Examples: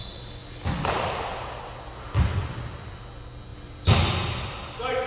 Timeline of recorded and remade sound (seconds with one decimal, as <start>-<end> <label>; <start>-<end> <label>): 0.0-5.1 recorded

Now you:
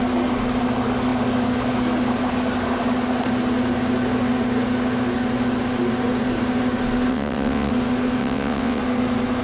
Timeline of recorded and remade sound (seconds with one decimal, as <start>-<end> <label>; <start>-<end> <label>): 0.0-7.1 recorded; 7.1-7.7 remade; 7.7-8.2 recorded; 8.2-8.8 remade; 8.8-9.4 recorded

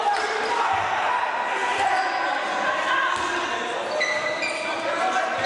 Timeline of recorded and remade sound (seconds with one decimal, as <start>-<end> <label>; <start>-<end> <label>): 0.0-5.5 recorded

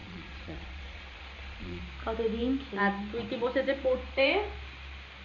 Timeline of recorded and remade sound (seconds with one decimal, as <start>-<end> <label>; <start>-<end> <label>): 0.0-1.8 remade; 1.8-5.2 recorded

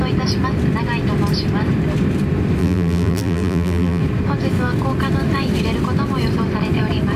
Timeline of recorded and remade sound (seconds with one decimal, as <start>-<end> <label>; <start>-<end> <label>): 0.0-2.6 recorded; 2.6-4.0 remade; 4.0-7.2 recorded

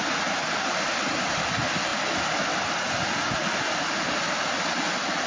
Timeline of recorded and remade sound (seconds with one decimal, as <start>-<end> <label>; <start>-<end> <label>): 0.0-5.3 recorded